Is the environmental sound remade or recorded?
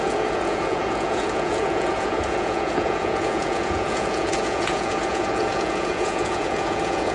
remade